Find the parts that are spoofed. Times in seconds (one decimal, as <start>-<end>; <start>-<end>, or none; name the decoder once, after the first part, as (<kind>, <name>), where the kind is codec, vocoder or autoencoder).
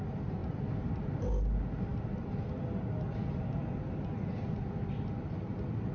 none